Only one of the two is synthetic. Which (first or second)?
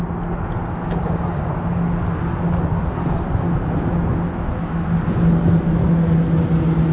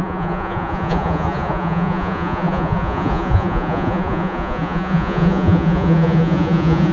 second